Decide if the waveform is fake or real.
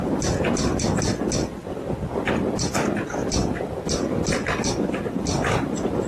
real